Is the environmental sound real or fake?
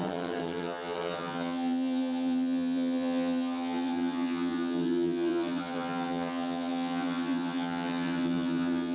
fake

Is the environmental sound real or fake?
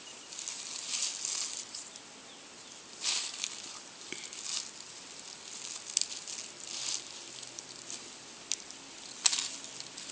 real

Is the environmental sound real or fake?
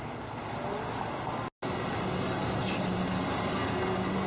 real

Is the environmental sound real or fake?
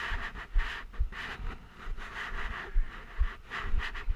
real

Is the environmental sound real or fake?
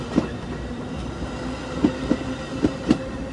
real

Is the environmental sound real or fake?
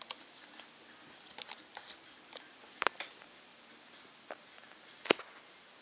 real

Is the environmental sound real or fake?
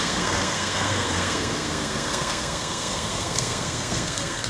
fake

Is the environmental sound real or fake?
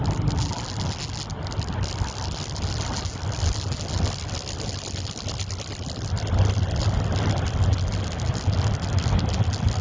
real